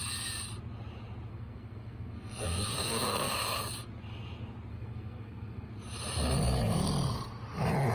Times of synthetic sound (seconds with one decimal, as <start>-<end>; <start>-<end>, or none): 1.3-3.3; 4.7-5.7